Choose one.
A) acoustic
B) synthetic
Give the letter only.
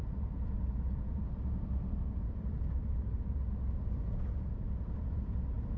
B